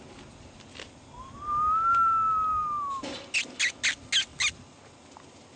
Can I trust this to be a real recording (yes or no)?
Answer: yes